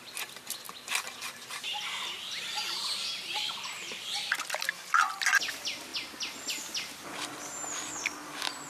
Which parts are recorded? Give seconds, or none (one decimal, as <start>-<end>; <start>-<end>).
0.0-8.7